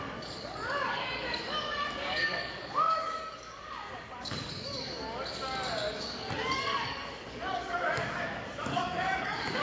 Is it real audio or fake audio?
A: fake